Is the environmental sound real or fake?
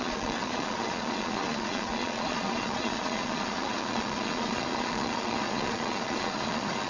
fake